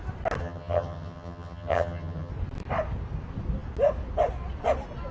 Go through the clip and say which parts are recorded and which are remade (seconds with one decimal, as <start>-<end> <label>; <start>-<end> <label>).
0.0-0.4 recorded; 0.4-2.3 remade; 2.3-5.1 recorded